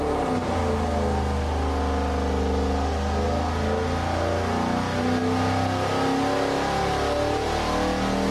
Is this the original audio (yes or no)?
yes